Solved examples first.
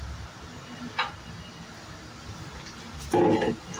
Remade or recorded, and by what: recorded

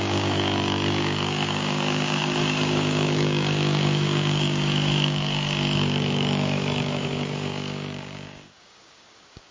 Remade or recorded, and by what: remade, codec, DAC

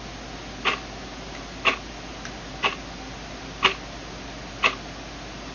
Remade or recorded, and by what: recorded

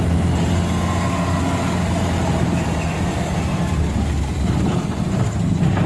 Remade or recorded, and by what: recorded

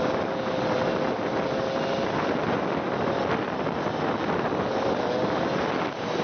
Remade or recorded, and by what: recorded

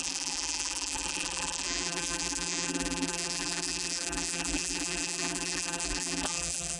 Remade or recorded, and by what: remade, vocoder, BigVGAN v2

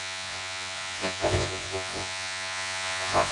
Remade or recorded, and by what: remade, vocoder, Vocos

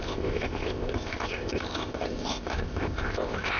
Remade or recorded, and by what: remade, codec, ZipCodec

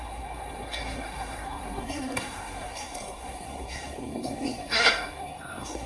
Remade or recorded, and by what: remade, codec, SNAC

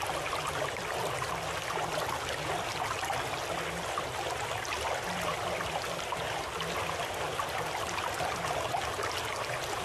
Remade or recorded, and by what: recorded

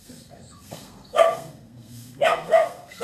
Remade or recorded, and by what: remade, codec, SNAC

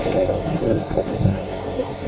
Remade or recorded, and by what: remade, codec, SNAC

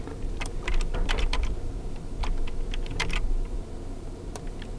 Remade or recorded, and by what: remade, vocoder, BigVGAN v2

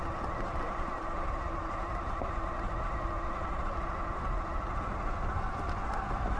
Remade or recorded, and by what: recorded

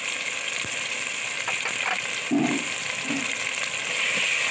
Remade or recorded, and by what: recorded